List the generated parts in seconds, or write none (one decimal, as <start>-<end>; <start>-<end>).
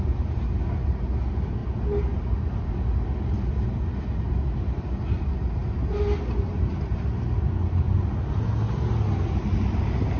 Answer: none